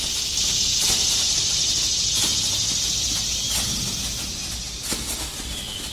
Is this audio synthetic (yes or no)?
no